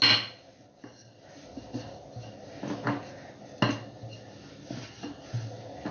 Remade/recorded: recorded